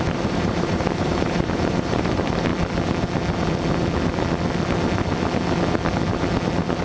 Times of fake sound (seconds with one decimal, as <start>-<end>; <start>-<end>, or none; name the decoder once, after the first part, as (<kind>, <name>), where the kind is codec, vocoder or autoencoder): 0.0-2.5 (vocoder, BigVGAN v2)